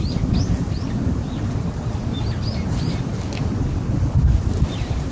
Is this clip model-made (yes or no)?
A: no